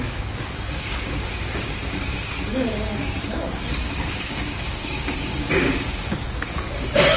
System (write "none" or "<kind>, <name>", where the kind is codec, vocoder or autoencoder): codec, DAC